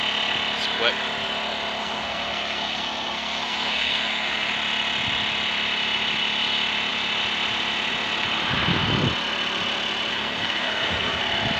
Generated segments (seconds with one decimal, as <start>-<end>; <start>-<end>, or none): 1.8-4.5; 10.1-11.2